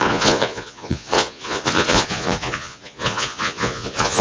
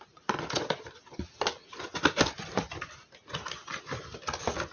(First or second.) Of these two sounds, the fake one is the first